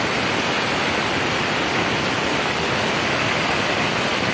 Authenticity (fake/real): real